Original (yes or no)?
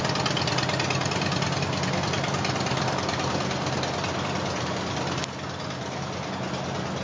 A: yes